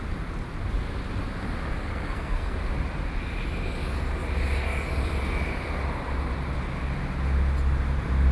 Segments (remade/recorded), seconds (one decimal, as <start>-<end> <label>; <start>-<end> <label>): 0.0-1.8 recorded; 1.8-2.6 remade; 2.6-8.3 recorded